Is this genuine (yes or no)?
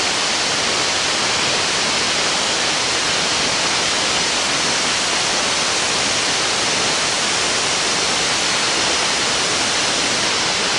yes